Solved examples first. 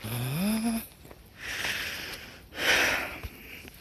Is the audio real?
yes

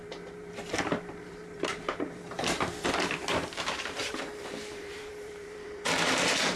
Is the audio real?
no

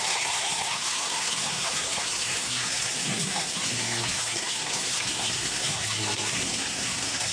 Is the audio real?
no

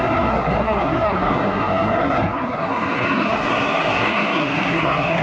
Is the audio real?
no